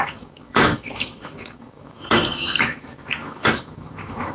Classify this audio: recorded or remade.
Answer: remade